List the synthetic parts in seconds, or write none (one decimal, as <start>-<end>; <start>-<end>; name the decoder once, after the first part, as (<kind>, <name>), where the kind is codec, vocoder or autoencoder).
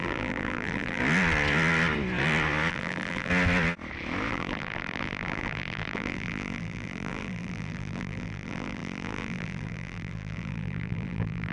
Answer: 0.0-1.0 (vocoder, BigVGAN v2); 2.7-3.3; 4.3-11.5